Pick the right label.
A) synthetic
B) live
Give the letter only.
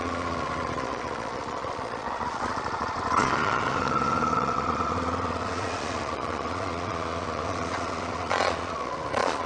A